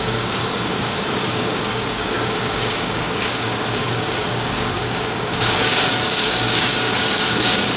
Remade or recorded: remade